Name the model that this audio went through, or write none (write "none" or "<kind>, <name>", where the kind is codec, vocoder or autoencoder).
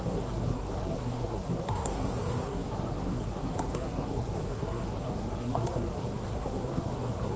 codec, SNAC